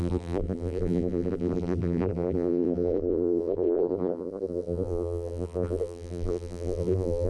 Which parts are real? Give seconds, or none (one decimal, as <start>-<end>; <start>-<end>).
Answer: none